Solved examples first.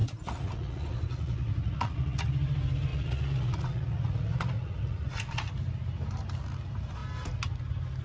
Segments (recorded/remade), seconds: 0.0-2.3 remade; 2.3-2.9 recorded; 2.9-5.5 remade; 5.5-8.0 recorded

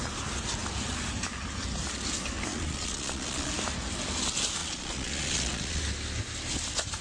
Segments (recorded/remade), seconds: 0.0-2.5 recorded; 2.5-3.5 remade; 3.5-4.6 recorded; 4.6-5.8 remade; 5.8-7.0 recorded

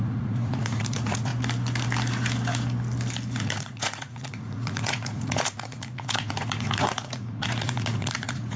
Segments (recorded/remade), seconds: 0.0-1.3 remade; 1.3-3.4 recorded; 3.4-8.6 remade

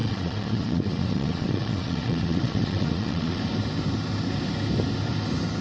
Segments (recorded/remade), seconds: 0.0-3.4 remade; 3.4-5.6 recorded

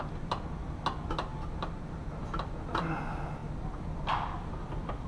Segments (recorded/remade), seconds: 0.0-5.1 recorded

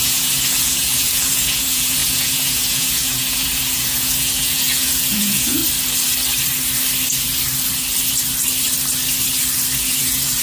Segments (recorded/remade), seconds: 0.0-5.6 remade; 5.6-10.0 recorded; 10.0-10.4 remade

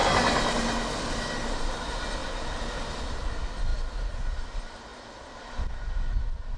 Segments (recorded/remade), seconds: 0.0-6.6 recorded